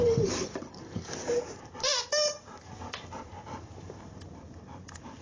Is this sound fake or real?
fake